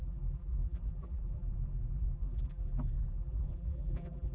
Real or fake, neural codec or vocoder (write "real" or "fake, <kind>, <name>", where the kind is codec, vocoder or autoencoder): fake, vocoder, BigVGAN v2